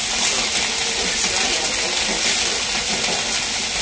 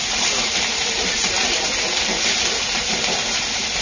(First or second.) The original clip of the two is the first